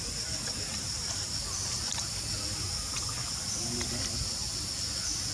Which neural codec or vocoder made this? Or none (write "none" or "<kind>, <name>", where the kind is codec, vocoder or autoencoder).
none